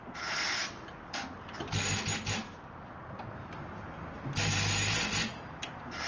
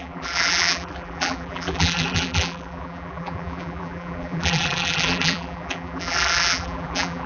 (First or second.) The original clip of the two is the first